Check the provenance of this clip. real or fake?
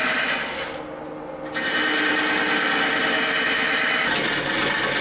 real